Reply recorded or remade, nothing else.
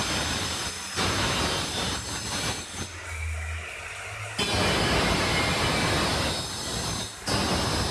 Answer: recorded